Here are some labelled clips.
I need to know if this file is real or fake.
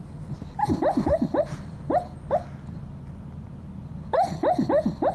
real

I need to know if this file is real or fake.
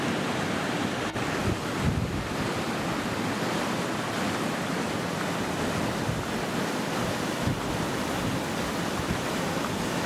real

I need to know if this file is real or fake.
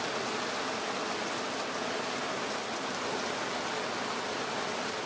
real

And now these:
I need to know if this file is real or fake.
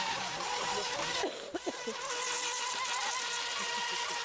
real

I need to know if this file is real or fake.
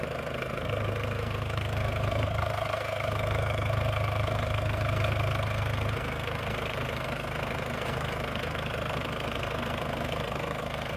fake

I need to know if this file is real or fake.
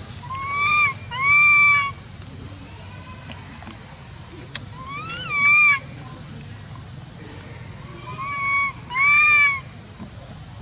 real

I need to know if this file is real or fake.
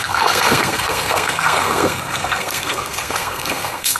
fake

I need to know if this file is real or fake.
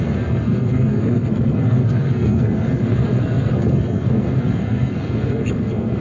fake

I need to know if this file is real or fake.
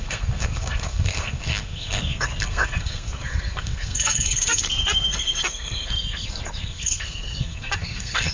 fake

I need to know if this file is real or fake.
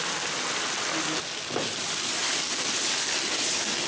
real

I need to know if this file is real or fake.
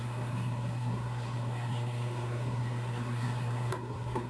fake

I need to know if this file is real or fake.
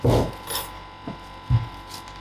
real